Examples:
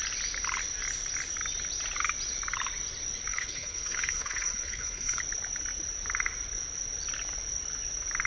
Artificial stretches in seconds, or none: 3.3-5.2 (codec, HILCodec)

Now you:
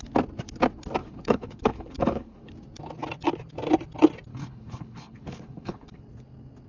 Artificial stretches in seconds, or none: 1.0-2.5 (codec, HILCodec); 4.3-6.0

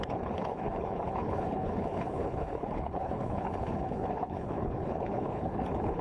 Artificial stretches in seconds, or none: 0.0-6.0 (codec, HILCodec)